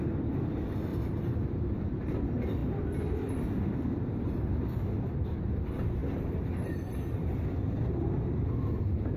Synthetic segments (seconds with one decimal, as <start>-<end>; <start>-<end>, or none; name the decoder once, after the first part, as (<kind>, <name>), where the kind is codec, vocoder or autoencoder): 0.9-2.2 (vocoder, BigVGAN v2); 6.0-7.2